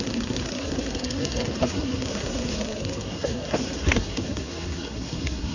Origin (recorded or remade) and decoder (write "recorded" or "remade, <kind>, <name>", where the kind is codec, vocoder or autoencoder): remade, codec, SNAC